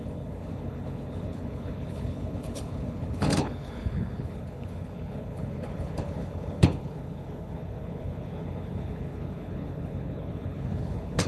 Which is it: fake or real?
fake